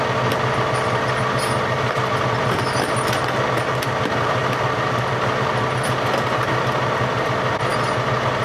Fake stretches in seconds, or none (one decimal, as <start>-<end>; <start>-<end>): none